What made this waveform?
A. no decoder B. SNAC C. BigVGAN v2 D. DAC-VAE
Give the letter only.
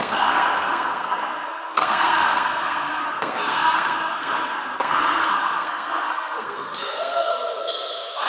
B